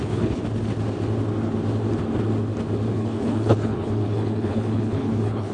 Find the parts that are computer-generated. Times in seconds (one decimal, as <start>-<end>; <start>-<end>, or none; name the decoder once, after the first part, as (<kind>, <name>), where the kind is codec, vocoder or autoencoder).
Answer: 0.0-0.4 (codec, HILCodec); 2.9-5.5